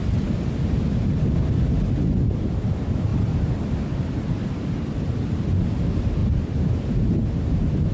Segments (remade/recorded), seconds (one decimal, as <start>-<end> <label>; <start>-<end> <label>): 0.0-0.8 remade; 0.8-3.1 recorded; 3.1-3.6 remade; 3.6-6.2 recorded; 6.2-6.9 remade; 6.9-7.9 recorded